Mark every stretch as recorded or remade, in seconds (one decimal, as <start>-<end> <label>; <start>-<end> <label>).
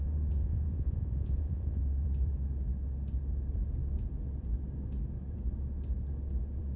0.0-0.4 recorded; 0.4-1.8 remade; 1.8-6.8 recorded